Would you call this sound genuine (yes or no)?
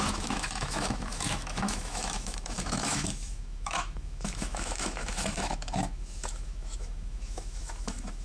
no